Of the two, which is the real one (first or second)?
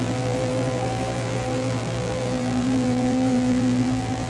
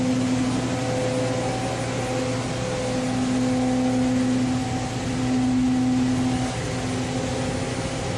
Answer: second